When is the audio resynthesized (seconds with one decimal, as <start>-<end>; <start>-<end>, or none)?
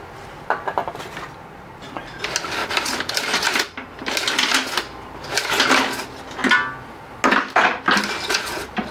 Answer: none